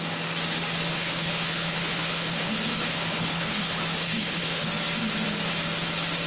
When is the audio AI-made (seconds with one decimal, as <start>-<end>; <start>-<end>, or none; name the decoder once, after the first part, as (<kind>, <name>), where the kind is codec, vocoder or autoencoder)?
0.9-4.7 (codec, HILCodec)